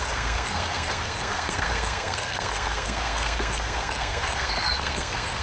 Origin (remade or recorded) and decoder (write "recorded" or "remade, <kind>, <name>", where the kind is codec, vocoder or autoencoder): remade, codec, SNAC